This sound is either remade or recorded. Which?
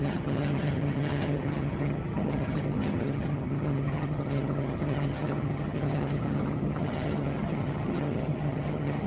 remade